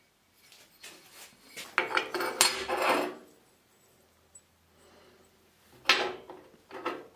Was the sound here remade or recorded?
recorded